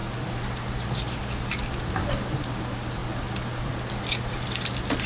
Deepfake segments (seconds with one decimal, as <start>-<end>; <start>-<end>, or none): none